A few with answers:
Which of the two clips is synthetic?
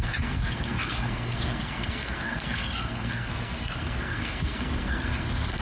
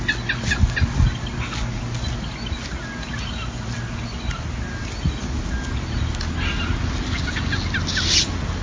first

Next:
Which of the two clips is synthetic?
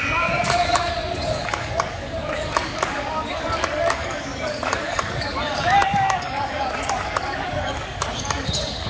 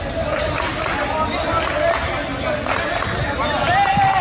first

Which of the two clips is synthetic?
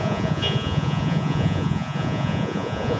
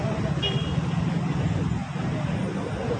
first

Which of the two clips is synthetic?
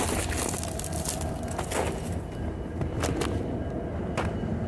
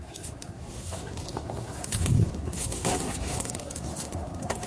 second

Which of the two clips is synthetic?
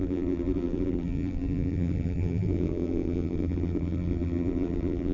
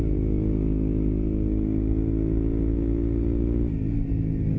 first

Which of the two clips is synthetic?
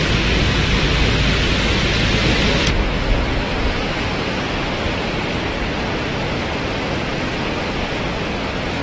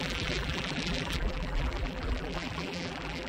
second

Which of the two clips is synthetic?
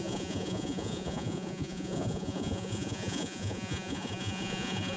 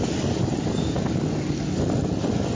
first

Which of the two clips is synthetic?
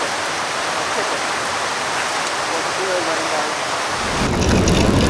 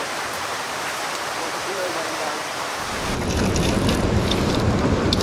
second